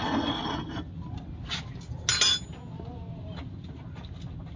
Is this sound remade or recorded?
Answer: recorded